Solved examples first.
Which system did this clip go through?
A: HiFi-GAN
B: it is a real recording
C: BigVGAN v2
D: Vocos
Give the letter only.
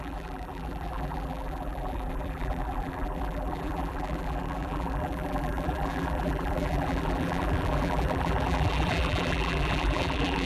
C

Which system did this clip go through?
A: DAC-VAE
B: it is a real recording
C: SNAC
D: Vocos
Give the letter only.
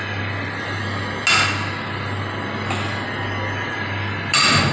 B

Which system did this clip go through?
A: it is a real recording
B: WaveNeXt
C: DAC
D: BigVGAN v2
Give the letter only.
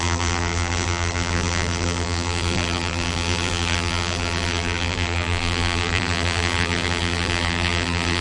D